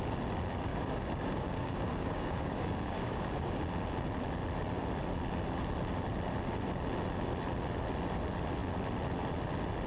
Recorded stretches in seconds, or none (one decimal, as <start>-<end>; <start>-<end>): 0.0-0.7; 3.6-9.9